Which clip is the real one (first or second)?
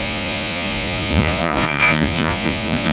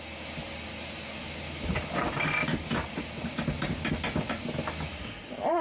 second